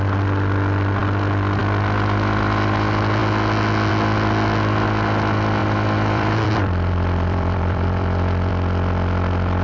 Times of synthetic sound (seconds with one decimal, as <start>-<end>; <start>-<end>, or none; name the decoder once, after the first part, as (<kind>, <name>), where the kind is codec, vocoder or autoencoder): 5.6-8.5 (vocoder, BigVGAN v2)